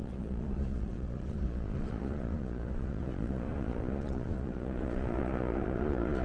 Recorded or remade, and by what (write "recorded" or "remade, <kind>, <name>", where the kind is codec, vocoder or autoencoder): remade, vocoder, Vocos